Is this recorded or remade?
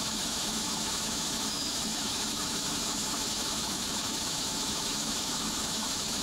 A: remade